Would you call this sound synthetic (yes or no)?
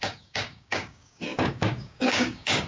yes